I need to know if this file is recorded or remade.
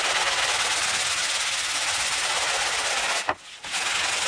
recorded